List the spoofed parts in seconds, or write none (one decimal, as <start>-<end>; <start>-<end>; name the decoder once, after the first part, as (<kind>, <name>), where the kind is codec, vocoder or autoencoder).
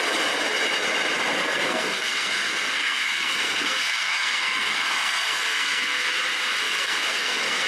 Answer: 1.4-6.0 (codec, SNAC); 6.6-7.7